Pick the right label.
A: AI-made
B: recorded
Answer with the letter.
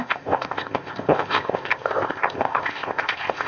A